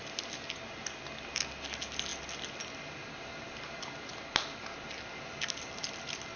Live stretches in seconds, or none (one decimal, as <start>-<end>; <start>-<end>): 0.0-6.4